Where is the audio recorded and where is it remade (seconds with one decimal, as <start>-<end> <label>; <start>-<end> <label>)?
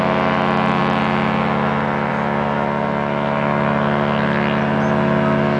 0.0-5.6 recorded